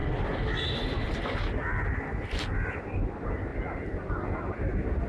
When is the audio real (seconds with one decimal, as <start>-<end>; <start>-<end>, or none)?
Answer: 0.0-5.1